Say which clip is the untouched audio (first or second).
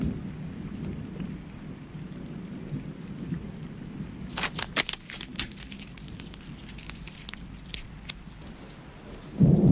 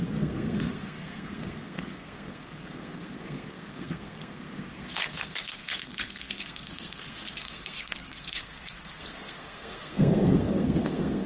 first